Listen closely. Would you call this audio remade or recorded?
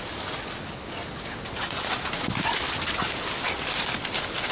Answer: recorded